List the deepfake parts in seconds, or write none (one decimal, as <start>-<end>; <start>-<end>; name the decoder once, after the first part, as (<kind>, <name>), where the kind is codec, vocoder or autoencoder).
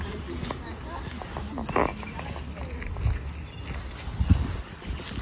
none